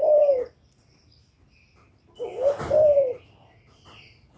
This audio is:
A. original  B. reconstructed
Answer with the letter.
B